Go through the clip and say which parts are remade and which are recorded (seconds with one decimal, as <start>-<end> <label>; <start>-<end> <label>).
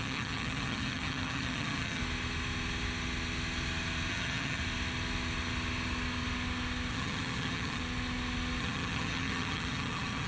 0.0-2.0 remade; 2.0-4.1 recorded; 4.1-4.6 remade; 4.6-6.9 recorded; 6.9-7.8 remade; 7.8-8.6 recorded; 8.6-10.3 remade